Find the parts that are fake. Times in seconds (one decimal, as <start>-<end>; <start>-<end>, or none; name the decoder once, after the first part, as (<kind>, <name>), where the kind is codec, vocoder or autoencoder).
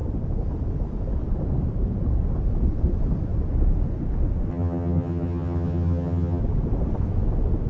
4.5-6.4 (vocoder, HiFi-GAN)